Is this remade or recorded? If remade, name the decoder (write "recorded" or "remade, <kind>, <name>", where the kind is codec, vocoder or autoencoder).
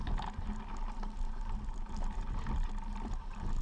recorded